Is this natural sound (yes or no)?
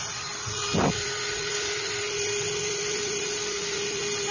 yes